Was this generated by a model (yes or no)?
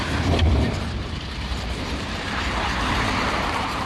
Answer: yes